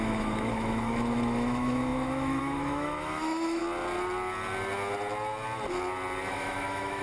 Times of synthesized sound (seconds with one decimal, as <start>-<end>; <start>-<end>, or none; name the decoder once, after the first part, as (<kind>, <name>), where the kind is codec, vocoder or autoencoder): 0.0-3.6 (autoencoder, DAC-VAE); 6.3-7.0